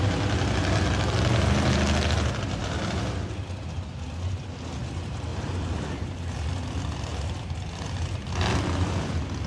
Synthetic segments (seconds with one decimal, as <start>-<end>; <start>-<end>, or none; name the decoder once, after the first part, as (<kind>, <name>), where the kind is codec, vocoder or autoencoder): 5.3-6.3 (vocoder, BigVGAN v2)